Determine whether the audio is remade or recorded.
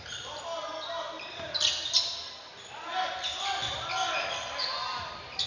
recorded